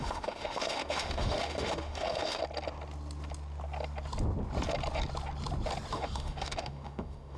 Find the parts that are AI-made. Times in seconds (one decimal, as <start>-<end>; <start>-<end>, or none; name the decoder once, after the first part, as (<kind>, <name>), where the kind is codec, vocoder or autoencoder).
0.0-2.4 (autoencoder, DAC-VAE); 5.9-7.4